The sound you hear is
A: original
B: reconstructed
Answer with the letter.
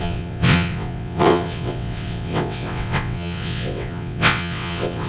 B